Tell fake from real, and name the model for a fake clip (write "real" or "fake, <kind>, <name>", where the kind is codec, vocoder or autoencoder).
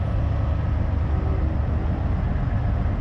real